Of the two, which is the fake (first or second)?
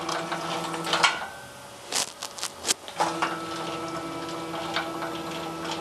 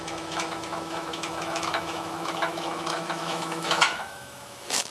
second